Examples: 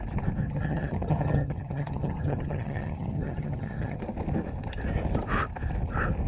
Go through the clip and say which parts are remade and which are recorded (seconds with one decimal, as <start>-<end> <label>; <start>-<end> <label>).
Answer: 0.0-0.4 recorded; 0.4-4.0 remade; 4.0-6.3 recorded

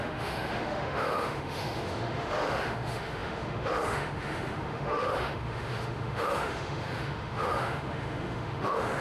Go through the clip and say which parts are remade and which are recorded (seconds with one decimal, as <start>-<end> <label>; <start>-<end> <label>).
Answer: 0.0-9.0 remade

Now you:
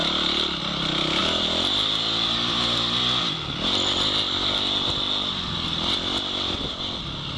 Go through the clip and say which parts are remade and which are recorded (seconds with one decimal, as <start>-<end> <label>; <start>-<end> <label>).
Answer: 0.0-7.4 recorded